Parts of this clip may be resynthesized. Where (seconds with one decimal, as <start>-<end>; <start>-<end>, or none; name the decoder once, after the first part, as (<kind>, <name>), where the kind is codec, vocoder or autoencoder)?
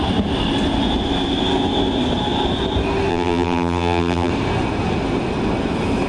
3.1-4.3 (vocoder, BigVGAN v2)